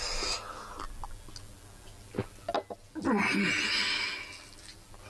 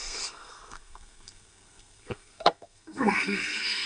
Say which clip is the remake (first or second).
second